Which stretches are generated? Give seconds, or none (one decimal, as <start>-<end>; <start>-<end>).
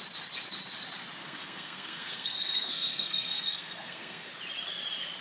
1.2-4.3